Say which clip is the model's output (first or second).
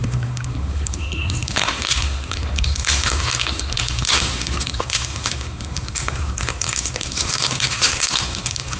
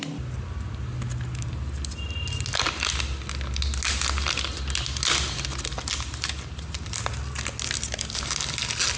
first